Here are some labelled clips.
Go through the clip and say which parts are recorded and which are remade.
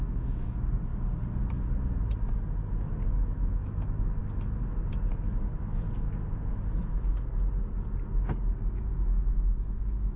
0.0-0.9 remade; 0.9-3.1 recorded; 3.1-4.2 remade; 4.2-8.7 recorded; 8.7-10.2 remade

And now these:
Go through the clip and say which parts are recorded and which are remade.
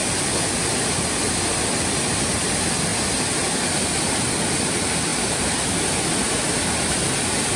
0.0-5.1 recorded; 5.1-6.3 remade; 6.3-7.6 recorded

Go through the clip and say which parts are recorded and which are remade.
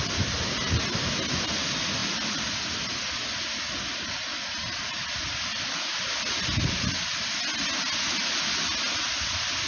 0.0-9.7 recorded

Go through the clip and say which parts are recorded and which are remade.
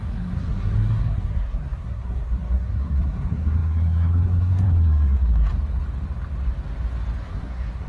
0.0-5.5 remade; 5.5-7.2 recorded; 7.2-7.9 remade